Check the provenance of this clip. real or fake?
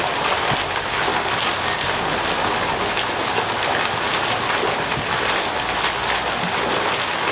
real